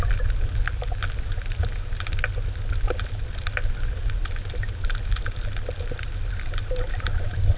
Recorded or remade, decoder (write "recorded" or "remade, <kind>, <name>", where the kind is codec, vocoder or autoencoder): recorded